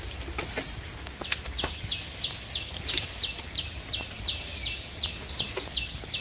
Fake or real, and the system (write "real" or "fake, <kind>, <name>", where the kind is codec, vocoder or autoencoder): real